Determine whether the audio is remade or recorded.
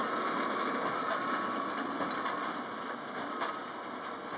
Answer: recorded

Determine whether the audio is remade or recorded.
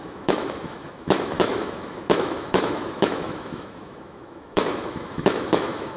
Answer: remade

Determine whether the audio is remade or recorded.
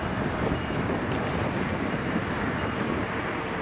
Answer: recorded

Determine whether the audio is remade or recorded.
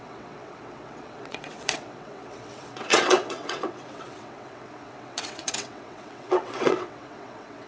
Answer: remade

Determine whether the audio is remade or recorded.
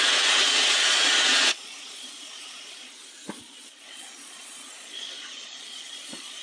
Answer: remade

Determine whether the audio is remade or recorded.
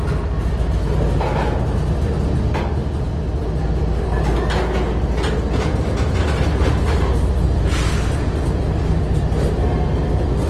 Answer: recorded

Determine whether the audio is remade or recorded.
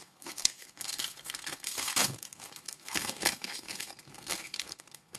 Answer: remade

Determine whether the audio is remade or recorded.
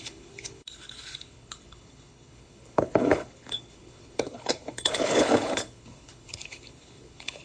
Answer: remade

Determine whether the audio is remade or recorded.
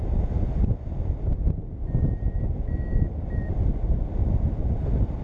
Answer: recorded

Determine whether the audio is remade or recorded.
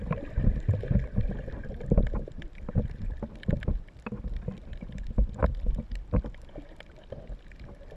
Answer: remade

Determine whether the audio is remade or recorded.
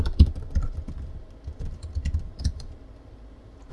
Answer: recorded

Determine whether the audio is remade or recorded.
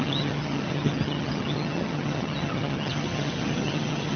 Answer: remade